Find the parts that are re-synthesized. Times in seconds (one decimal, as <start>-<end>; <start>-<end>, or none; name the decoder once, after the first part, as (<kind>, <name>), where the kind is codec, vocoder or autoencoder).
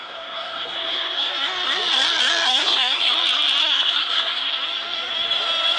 0.0-1.3 (codec, SNAC); 2.5-3.1; 3.6-4.5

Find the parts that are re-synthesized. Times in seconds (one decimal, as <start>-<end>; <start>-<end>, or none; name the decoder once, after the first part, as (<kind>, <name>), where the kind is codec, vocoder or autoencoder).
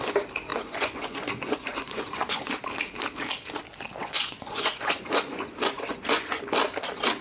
0.5-2.5 (vocoder, Vocos); 4.0-6.4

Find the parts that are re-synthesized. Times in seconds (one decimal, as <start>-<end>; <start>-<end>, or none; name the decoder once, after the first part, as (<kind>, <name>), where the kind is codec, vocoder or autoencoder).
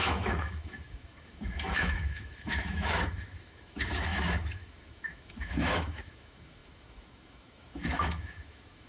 0.0-8.9 (autoencoder, DAC-VAE)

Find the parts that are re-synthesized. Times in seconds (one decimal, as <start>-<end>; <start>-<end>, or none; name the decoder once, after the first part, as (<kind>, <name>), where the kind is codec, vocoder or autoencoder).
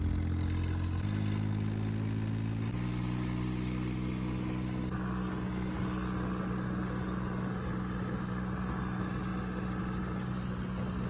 none